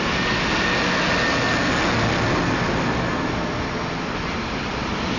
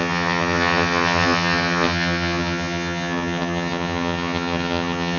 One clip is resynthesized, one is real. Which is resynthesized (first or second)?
second